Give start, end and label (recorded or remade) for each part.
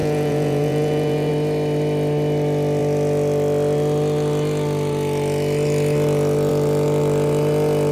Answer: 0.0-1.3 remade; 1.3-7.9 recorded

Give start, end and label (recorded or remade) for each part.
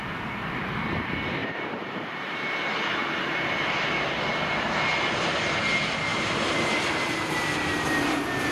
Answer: 0.0-1.4 recorded; 1.4-2.3 remade; 2.3-3.0 recorded; 3.0-4.1 remade; 4.1-6.1 recorded; 6.1-6.8 remade; 6.8-8.5 recorded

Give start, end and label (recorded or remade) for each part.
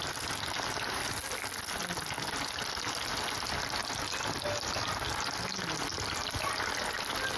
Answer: 0.0-7.4 recorded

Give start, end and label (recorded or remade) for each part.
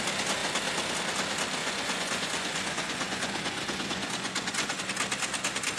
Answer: 0.0-1.6 recorded; 1.6-4.8 remade; 4.8-5.8 recorded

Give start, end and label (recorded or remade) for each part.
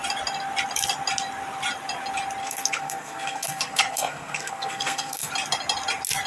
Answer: 0.0-2.4 recorded; 2.4-5.3 remade; 5.3-6.3 recorded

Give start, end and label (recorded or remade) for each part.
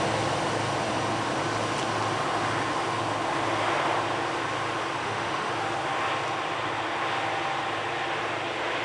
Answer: 0.0-5.0 recorded; 5.0-5.5 remade; 5.5-8.8 recorded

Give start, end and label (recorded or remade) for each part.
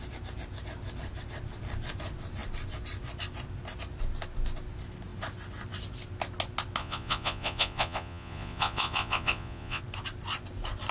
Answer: 0.0-6.8 recorded; 6.8-9.8 remade; 9.8-10.9 recorded